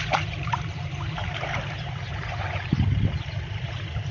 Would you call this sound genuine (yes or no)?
no